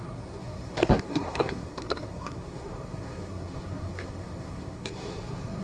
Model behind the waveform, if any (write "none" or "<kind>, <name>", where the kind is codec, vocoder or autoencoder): codec, SNAC